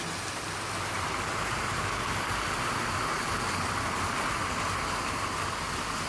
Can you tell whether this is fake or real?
real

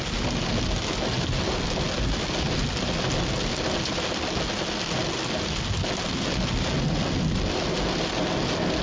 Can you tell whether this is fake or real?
real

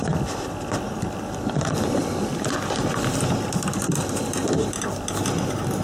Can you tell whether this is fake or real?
fake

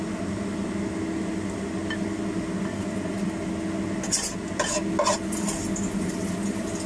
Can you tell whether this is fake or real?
real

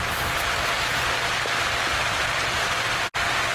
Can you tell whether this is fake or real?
real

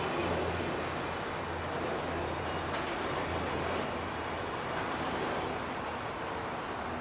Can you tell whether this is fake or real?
real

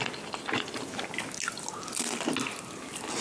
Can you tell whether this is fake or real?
real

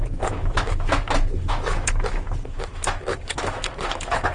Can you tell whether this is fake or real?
fake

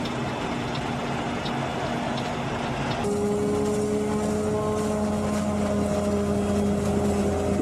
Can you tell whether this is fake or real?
real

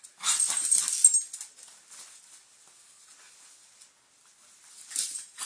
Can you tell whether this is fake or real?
real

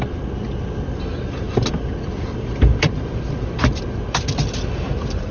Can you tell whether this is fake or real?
fake